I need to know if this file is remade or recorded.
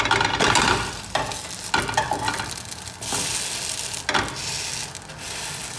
recorded